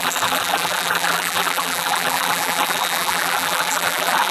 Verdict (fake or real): fake